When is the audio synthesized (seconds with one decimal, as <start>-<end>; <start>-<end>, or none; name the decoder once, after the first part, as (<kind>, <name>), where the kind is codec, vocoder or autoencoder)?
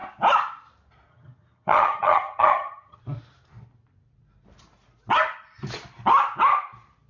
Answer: 1.1-3.0 (vocoder, HiFi-GAN)